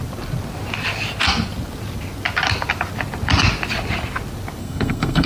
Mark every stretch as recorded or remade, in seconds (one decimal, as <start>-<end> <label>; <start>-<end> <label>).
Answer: 0.0-4.6 recorded; 4.6-5.3 remade